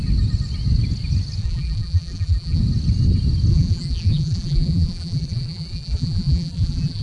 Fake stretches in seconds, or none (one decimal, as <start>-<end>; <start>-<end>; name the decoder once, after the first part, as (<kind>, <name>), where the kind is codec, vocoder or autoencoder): 1.4-2.6 (vocoder, BigVGAN v2); 3.5-7.0